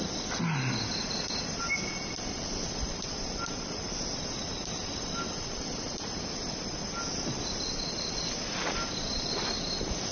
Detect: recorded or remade recorded